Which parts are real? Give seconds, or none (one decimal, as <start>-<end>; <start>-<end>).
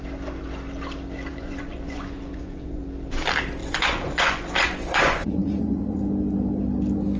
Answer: 0.0-1.3; 2.8-3.6; 6.0-7.2